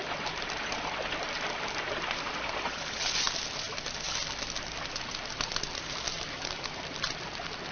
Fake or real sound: real